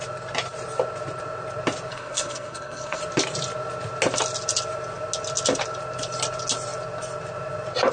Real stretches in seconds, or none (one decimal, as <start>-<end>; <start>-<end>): 0.0-1.9; 3.0-7.9